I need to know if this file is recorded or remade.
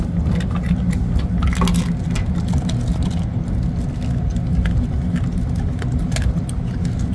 recorded